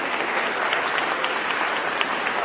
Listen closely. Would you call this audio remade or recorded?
recorded